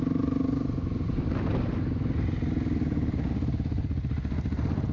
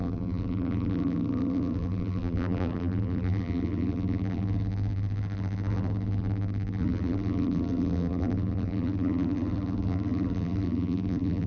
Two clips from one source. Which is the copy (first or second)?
second